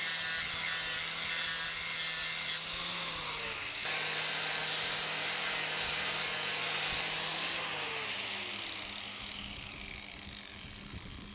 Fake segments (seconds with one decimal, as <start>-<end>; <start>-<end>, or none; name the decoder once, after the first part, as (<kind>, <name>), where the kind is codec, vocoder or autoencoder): 9.1-9.7 (autoencoder, DAC-VAE)